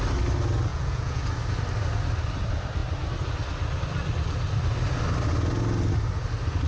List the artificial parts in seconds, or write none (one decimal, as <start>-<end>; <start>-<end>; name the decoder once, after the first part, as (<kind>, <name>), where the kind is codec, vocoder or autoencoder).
0.7-1.3 (vocoder, Vocos)